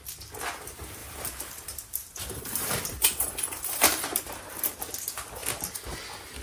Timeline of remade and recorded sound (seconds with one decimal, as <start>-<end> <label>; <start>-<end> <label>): 0.0-1.0 recorded; 1.0-4.8 remade; 4.8-6.4 recorded